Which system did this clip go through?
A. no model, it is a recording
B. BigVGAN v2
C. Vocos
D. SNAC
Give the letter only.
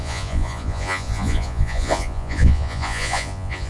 C